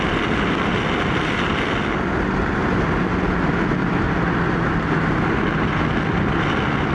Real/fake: real